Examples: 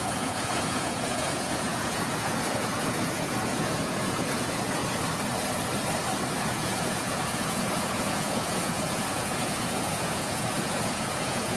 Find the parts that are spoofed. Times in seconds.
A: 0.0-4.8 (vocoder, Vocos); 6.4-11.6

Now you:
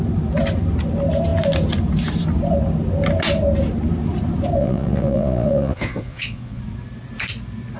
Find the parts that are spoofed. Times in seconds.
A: 4.6-6.6 (vocoder, Vocos)

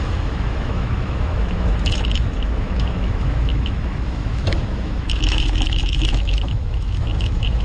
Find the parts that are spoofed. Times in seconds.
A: 0.0-7.6 (autoencoder, DAC-VAE)

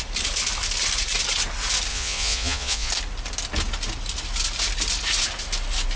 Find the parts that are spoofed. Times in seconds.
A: 1.9-2.9 (vocoder, Vocos)